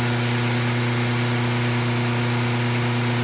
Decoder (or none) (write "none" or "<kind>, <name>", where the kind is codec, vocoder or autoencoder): none